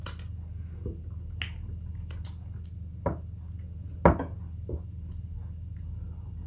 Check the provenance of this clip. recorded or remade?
recorded